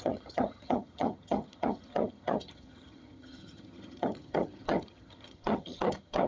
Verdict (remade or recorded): remade